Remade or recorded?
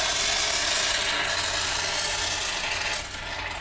recorded